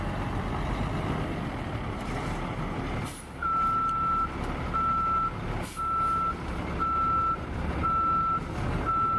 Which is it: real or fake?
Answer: real